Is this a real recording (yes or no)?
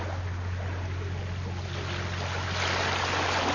yes